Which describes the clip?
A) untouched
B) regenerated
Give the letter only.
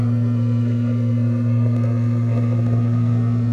B